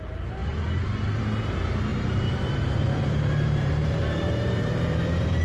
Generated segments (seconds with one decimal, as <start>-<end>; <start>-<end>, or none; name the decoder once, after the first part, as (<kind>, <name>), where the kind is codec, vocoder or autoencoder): 0.4-1.2 (vocoder, BigVGAN v2); 1.9-5.4